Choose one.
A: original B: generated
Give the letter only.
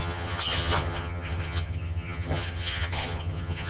B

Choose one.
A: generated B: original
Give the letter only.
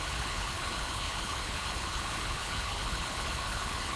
A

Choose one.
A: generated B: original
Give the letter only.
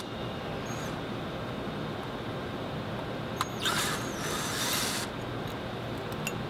B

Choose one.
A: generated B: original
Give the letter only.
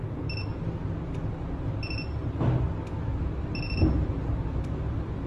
B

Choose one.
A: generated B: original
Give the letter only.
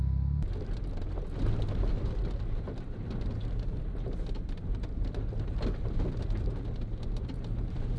B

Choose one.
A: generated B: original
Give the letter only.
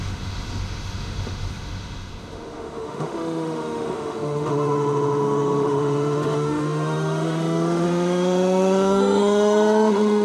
A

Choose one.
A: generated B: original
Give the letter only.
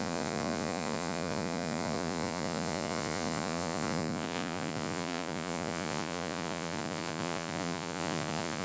A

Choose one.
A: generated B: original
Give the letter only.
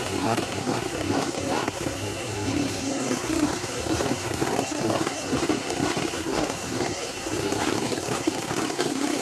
A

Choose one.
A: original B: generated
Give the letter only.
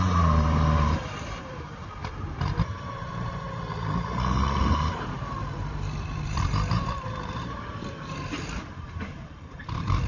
B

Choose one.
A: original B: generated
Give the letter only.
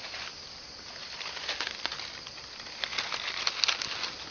A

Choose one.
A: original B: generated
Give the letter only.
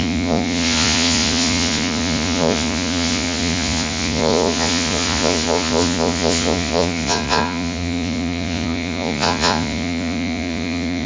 B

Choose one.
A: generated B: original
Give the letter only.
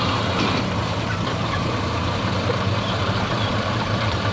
A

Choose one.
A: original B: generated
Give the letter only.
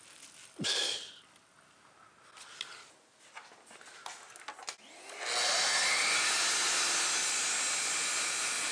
A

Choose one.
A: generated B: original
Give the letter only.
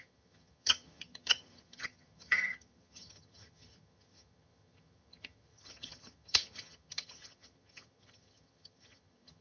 A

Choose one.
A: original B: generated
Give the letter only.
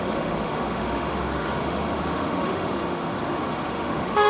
B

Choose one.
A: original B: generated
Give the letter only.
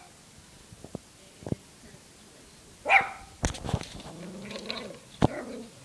A